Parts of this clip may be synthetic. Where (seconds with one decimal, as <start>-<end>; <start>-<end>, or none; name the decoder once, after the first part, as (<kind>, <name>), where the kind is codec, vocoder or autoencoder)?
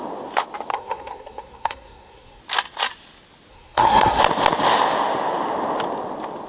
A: 0.7-2.4 (codec, SNAC); 3.5-4.2